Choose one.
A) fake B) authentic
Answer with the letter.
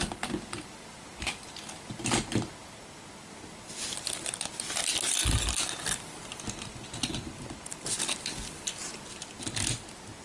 B